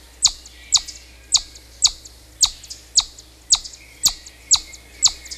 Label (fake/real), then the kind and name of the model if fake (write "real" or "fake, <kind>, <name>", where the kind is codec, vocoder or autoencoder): real